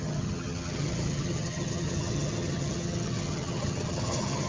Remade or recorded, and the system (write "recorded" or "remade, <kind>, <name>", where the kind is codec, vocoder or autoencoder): remade, vocoder, HiFi-GAN